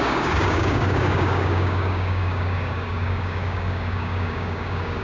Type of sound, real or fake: fake